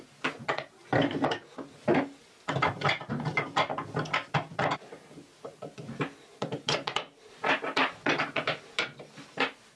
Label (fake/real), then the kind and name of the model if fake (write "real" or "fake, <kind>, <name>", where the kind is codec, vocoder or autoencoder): real